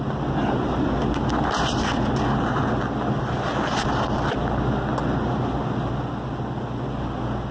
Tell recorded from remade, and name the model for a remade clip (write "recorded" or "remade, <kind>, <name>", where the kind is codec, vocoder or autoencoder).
recorded